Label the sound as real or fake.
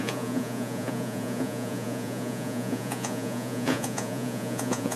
fake